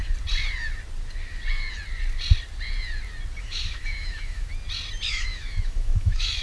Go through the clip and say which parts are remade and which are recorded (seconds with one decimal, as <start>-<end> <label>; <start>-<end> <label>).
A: 0.0-3.4 recorded; 3.4-4.5 remade; 4.5-5.1 recorded; 5.1-6.4 remade